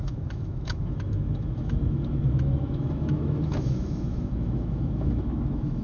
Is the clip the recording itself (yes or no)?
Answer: no